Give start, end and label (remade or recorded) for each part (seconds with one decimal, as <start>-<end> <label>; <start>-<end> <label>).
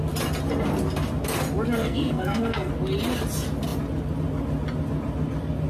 0.0-1.8 recorded; 1.8-2.7 remade; 2.7-5.7 recorded